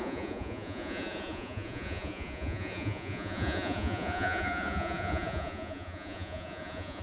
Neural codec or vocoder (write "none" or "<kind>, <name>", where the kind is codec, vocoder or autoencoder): vocoder, Vocos